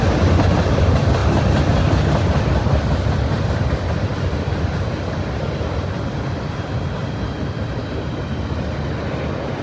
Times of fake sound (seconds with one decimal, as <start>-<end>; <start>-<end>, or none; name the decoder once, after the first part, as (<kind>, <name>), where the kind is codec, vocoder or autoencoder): none